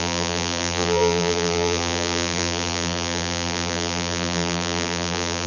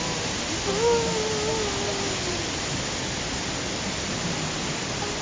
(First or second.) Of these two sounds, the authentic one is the second